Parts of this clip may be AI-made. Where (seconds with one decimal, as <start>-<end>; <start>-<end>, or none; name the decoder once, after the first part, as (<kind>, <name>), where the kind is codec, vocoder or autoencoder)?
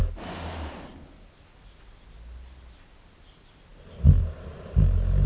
none